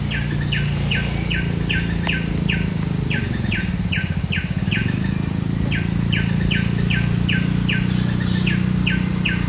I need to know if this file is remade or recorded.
recorded